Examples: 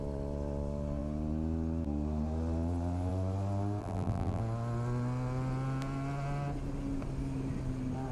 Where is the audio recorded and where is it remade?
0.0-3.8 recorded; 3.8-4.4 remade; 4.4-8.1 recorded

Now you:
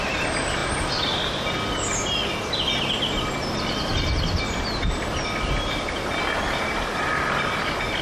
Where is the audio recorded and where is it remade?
0.0-8.0 recorded

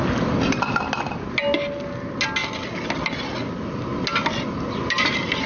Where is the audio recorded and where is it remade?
0.0-5.5 recorded

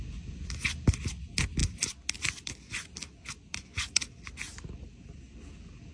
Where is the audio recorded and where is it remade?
0.0-5.9 recorded

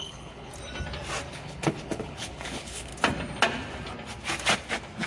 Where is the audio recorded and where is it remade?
0.0-0.5 remade; 0.5-1.3 recorded; 1.3-2.9 remade; 2.9-5.1 recorded

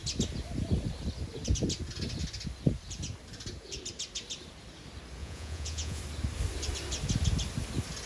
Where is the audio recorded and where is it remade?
0.0-5.2 recorded; 5.2-6.0 remade; 6.0-8.1 recorded

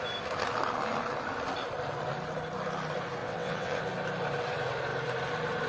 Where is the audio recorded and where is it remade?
0.0-3.2 recorded; 3.2-3.8 remade; 3.8-5.7 recorded